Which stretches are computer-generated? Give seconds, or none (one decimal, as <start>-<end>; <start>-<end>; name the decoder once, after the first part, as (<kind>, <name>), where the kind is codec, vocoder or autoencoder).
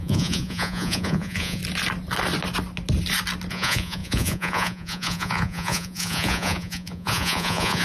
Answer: 0.0-1.6 (vocoder, Vocos); 3.5-7.8